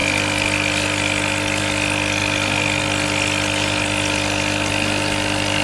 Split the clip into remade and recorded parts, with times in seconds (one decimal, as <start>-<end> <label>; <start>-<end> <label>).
0.0-5.6 recorded